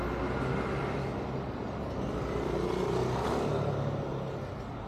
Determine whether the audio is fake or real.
real